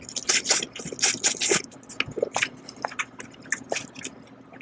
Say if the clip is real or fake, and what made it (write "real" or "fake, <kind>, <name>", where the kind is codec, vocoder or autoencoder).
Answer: real